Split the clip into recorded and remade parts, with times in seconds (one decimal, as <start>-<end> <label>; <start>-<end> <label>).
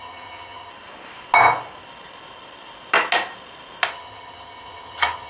0.0-0.7 remade; 0.7-3.9 recorded; 3.9-5.3 remade